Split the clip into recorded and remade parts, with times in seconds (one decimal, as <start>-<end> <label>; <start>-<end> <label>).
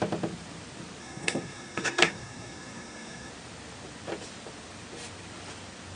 0.0-1.0 recorded; 1.0-3.3 remade; 3.3-6.0 recorded